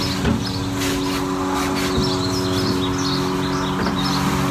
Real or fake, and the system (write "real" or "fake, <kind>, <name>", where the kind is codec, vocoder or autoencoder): real